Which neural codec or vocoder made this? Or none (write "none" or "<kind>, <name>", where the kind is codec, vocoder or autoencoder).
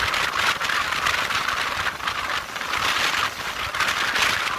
none